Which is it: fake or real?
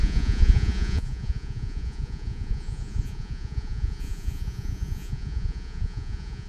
fake